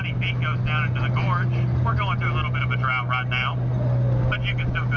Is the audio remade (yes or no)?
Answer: no